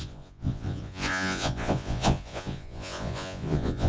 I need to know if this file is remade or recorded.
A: remade